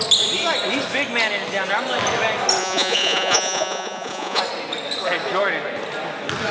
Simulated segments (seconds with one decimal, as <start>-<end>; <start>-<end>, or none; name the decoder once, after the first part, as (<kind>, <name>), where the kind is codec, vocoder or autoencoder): 2.6-4.4 (vocoder, Vocos)